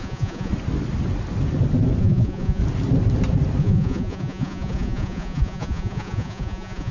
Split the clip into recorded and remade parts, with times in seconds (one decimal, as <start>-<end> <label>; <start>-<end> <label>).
0.0-0.5 remade; 0.5-2.0 recorded; 2.0-2.6 remade; 2.6-3.6 recorded; 3.6-6.9 remade